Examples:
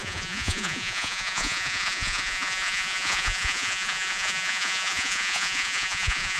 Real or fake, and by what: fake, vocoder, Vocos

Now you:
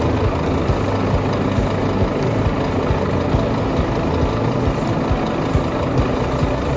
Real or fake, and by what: real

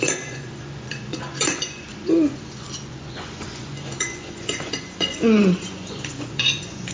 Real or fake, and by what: fake, vocoder, Vocos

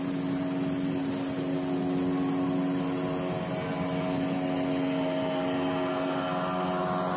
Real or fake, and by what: real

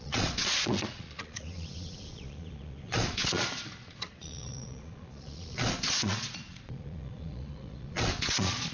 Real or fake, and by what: fake, vocoder, Vocos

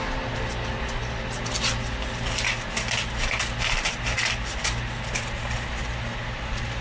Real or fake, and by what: real